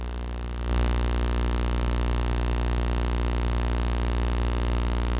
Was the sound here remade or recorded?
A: recorded